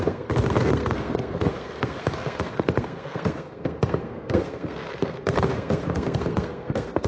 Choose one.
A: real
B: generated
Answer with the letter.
B